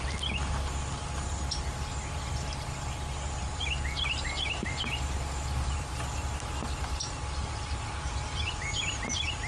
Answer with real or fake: real